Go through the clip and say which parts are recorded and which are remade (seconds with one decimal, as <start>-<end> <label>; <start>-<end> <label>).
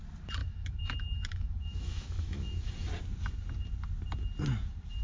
0.0-0.4 recorded; 0.4-2.7 remade; 2.7-5.0 recorded